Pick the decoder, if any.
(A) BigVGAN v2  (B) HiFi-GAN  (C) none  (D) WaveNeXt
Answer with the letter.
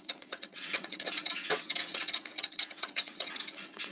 D